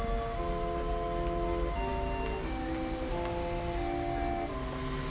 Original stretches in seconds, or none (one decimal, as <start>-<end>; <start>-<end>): 0.0-5.1